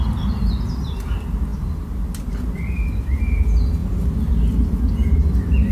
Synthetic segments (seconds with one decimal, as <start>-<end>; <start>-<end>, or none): none

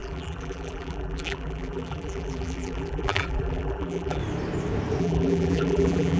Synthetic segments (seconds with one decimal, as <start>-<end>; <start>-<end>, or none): 0.0-4.2; 5.0-6.2

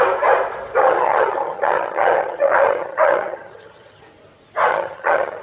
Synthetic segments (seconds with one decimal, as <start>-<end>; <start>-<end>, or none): 0.8-4.0; 4.7-5.4

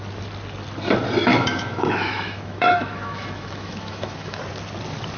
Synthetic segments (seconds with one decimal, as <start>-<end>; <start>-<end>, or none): 1.3-4.4

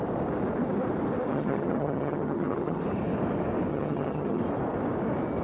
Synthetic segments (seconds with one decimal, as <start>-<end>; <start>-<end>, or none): 1.3-2.8; 3.7-4.4